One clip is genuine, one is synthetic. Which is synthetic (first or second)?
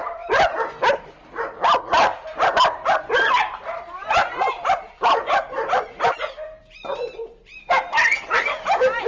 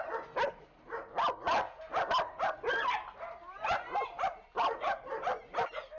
first